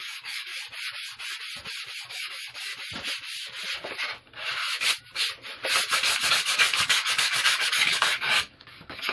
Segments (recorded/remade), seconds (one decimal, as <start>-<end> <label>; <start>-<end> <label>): 0.0-0.5 remade; 0.5-2.1 recorded; 2.1-2.7 remade; 2.7-6.3 recorded; 6.3-9.1 remade